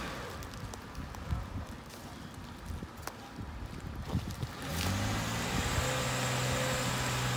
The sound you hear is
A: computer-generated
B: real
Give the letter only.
B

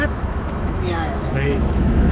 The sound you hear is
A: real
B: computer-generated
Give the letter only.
B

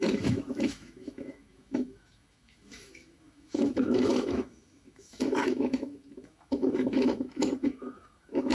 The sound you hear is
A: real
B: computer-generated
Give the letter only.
B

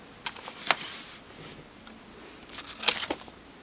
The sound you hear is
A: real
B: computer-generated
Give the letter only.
A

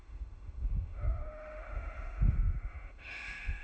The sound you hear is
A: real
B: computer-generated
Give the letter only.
B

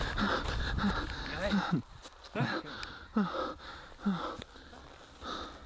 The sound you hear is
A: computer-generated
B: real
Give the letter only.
B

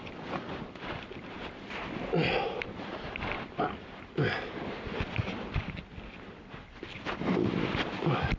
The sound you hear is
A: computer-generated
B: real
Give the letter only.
B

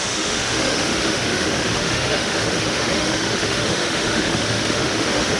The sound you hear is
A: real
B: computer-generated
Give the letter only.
B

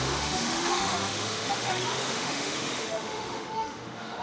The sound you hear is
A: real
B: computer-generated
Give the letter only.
B